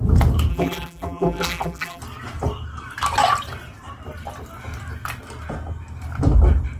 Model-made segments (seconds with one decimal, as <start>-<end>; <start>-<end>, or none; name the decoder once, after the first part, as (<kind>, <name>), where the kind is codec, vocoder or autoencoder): 0.5-2.0 (vocoder, BigVGAN v2)